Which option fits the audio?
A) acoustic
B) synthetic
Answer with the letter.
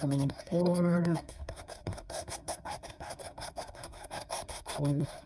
B